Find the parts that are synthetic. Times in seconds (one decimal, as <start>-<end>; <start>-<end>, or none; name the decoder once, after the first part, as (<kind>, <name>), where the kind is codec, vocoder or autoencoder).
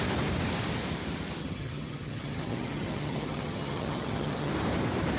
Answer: 1.4-4.5 (vocoder, HiFi-GAN)